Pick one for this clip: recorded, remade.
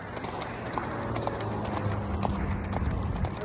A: recorded